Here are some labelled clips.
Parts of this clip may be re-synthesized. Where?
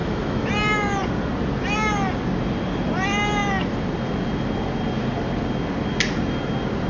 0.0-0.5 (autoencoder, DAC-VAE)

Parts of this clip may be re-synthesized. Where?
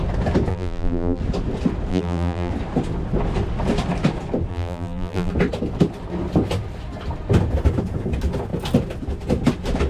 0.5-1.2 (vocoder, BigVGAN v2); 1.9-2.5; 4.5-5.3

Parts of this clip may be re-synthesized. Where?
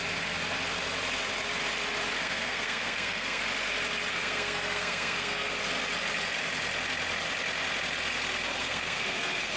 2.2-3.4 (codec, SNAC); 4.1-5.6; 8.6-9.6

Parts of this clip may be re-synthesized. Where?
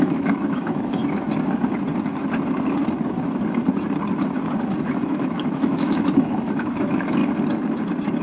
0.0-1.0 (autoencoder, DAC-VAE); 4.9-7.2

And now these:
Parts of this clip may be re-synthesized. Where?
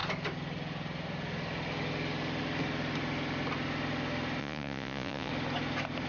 4.4-5.3 (vocoder, Vocos)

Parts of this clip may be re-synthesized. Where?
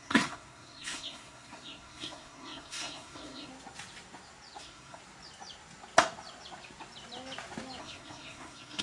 0.0-3.5 (codec, SNAC); 4.6-5.0; 7.8-8.8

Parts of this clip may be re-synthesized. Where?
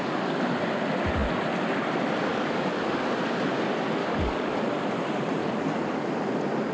2.3-3.1 (codec, DAC); 4.0-4.6; 5.4-6.1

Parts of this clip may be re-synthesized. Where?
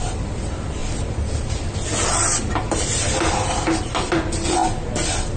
0.0-0.8 (vocoder, BigVGAN v2); 4.0-4.6